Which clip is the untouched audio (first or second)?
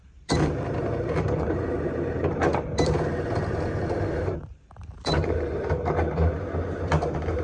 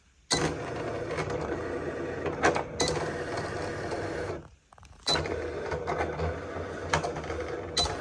second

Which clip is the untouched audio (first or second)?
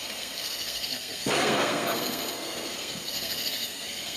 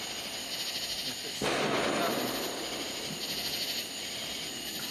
second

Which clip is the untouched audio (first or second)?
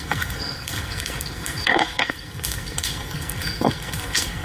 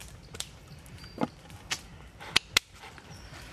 second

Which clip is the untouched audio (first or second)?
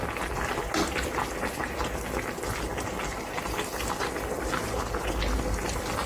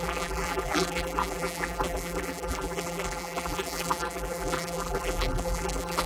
first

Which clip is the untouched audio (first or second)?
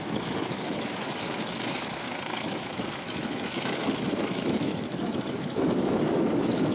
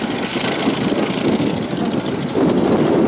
second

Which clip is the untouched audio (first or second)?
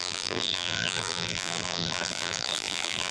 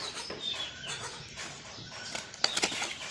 second